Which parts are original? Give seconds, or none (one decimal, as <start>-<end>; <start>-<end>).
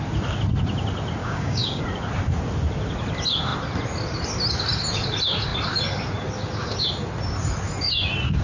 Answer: 0.0-1.2; 1.8-8.4